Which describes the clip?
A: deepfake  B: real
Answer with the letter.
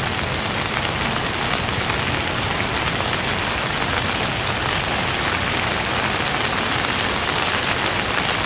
B